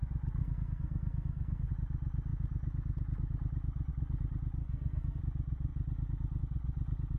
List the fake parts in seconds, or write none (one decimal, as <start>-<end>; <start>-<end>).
0.4-1.7; 4.6-5.2